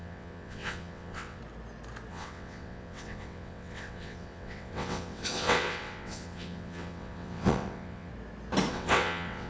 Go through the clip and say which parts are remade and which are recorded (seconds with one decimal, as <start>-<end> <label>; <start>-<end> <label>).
0.0-1.4 remade; 1.4-2.1 recorded; 2.1-8.1 remade; 8.1-8.7 recorded; 8.7-9.5 remade